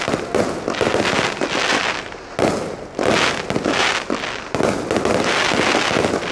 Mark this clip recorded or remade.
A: recorded